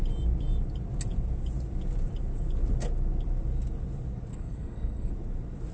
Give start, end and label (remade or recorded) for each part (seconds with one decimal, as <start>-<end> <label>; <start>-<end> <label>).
0.0-4.3 recorded; 4.3-5.1 remade; 5.1-5.7 recorded